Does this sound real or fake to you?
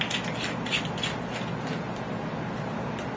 real